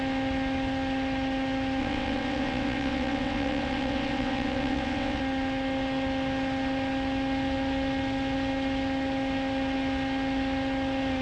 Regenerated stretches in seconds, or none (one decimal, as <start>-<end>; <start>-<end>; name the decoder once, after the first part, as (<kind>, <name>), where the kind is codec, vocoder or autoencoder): 1.8-5.2 (vocoder, WaveNeXt)